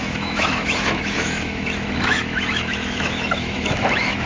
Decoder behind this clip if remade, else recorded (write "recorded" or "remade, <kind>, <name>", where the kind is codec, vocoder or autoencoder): remade, autoencoder, DAC-VAE